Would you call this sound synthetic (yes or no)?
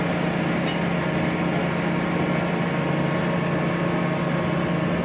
no